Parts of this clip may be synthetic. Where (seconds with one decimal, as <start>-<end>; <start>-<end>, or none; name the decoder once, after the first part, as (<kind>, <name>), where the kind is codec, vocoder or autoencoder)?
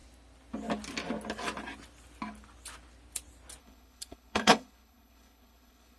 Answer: 3.6-6.0 (codec, HILCodec)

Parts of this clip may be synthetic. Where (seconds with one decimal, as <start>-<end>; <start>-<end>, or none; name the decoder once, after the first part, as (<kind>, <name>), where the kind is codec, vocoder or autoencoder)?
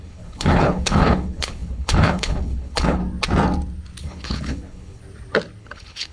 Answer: 0.0-3.0 (codec, HILCodec); 4.0-5.0; 5.6-6.1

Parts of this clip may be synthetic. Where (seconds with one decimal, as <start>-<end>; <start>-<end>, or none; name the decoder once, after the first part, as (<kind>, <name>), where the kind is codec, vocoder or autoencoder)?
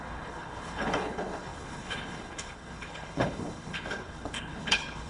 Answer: 0.0-5.1 (codec, HILCodec)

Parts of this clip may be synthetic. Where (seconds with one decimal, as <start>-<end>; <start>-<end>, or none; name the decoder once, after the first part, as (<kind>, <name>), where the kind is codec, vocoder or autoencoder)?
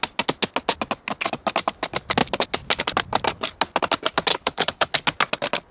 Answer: 4.3-4.9 (codec, HILCodec)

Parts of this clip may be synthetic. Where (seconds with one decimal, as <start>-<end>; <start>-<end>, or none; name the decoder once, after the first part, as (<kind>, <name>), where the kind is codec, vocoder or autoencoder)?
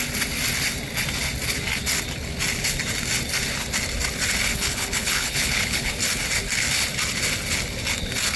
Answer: 4.5-5.9 (codec, HILCodec)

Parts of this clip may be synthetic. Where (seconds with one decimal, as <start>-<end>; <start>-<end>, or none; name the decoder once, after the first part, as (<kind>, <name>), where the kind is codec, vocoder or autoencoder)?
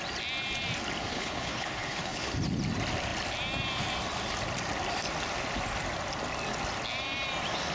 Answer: 1.1-2.3 (codec, HILCodec)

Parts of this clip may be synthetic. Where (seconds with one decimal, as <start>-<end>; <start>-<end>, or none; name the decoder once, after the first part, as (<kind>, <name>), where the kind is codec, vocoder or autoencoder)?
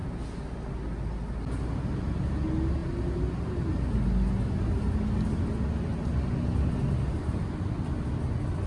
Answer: none